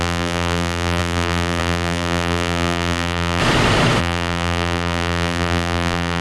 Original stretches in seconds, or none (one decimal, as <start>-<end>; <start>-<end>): 3.4-4.0